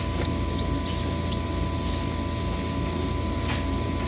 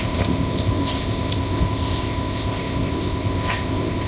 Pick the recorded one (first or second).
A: first